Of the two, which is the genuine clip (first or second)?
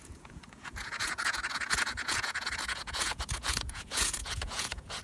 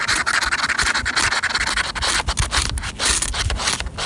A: second